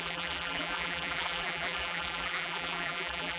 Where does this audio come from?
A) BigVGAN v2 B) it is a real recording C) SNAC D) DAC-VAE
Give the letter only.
A